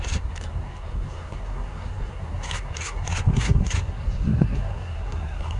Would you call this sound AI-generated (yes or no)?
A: yes